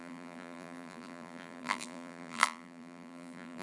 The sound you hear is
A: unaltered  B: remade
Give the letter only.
B